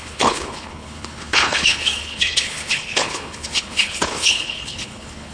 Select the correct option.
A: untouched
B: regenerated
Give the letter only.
B